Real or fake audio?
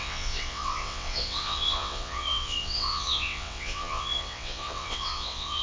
fake